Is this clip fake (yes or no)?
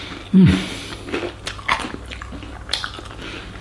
no